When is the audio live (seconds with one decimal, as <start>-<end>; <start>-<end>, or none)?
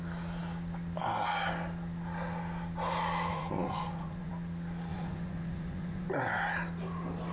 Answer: 0.0-3.3; 4.3-4.9; 6.1-7.3